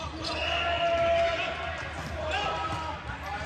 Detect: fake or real real